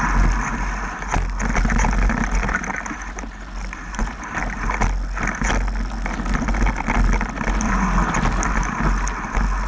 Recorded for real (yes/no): yes